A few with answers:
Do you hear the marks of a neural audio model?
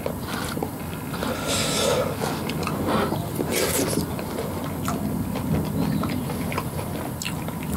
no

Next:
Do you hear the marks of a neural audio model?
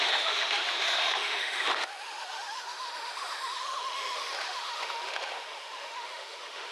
yes